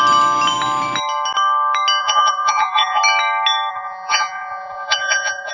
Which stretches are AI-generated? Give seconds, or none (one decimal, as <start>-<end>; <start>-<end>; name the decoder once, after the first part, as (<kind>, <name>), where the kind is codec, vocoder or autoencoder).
2.0-3.0 (vocoder, Vocos); 3.7-5.5